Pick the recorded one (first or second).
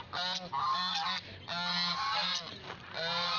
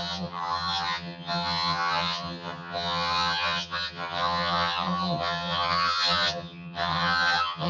first